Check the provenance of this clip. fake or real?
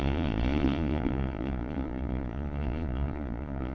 fake